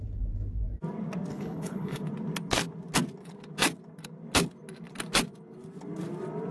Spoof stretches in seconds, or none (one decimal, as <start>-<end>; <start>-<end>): 1.3-2.0